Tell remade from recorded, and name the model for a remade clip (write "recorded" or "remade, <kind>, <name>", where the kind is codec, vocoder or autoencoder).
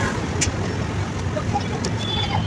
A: recorded